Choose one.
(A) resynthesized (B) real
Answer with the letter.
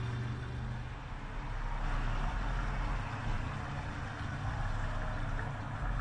B